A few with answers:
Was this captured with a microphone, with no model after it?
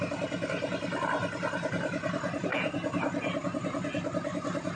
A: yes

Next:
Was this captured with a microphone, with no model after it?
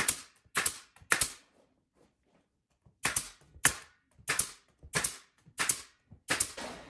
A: yes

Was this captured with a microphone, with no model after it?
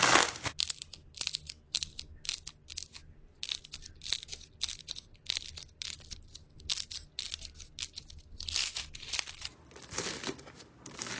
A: yes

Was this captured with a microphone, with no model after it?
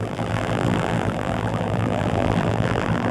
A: no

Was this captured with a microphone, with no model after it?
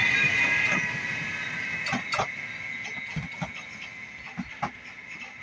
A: yes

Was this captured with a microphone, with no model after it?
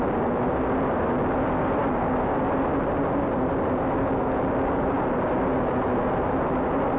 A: yes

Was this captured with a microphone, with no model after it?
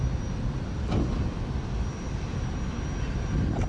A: yes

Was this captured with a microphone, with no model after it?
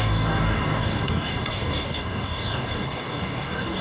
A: no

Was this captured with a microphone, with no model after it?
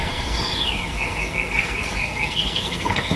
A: no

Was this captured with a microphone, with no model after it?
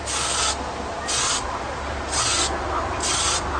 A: yes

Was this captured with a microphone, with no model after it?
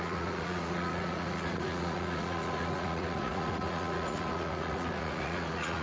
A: no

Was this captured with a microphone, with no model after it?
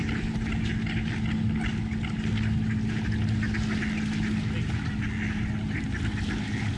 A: yes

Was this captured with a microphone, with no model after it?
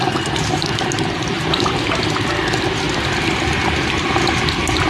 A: yes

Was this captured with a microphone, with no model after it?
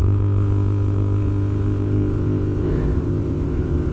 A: no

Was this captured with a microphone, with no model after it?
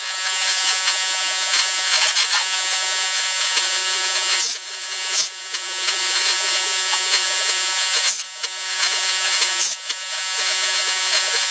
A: no